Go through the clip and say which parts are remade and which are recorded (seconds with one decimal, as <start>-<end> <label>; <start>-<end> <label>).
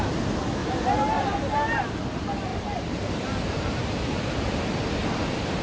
0.0-0.6 recorded; 0.6-1.9 remade; 1.9-2.5 recorded; 2.5-3.1 remade; 3.1-3.8 recorded; 3.8-4.8 remade; 4.8-5.6 recorded